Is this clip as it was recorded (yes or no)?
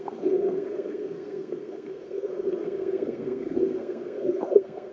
no